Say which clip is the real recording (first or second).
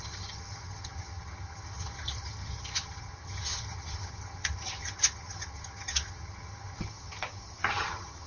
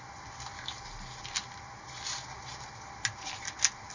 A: second